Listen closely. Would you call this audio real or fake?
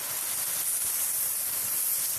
real